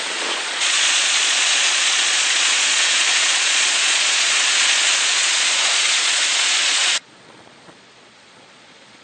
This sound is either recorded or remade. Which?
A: remade